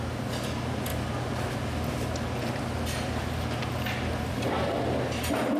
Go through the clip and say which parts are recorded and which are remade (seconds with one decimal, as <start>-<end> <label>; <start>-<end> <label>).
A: 0.0-5.6 recorded